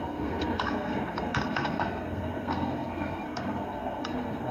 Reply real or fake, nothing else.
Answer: fake